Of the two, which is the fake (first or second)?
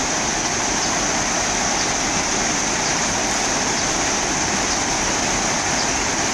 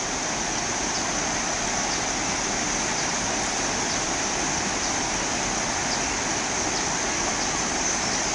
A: first